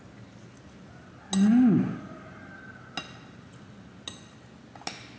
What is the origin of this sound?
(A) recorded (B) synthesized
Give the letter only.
A